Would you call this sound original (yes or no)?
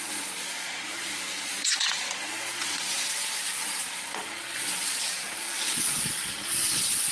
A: no